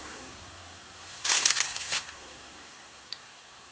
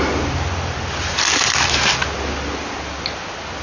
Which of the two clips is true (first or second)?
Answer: second